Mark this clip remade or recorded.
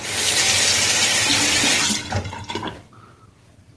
recorded